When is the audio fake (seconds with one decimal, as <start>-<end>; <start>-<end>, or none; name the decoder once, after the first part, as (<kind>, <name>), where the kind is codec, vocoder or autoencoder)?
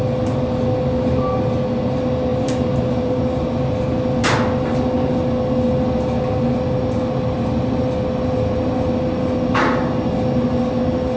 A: 2.3-3.2 (vocoder, BigVGAN v2)